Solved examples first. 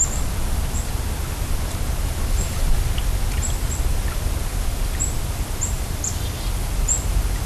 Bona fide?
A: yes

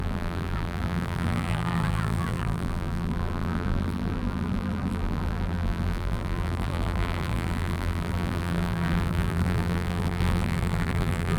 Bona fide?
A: no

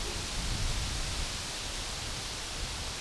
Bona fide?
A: yes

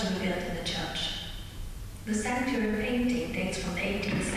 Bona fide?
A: no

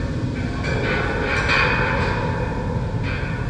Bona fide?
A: yes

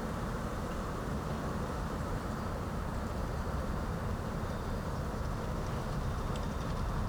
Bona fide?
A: no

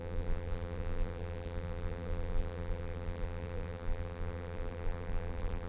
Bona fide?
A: no